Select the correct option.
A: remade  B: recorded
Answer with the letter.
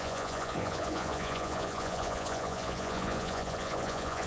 A